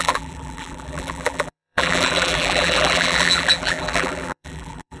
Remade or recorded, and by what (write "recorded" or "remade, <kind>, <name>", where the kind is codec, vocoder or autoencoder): remade, vocoder, BigVGAN v2